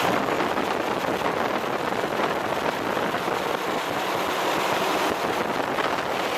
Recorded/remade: recorded